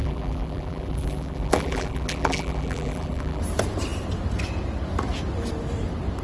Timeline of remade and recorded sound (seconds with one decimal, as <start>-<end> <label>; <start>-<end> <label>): 0.0-3.4 remade; 3.4-6.2 recorded